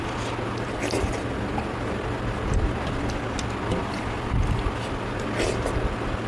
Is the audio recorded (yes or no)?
yes